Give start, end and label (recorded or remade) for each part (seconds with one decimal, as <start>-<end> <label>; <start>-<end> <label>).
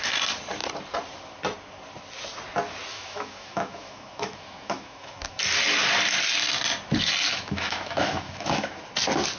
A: 0.0-2.9 recorded; 2.9-5.4 remade; 5.4-7.3 recorded; 7.3-8.8 remade; 8.8-9.4 recorded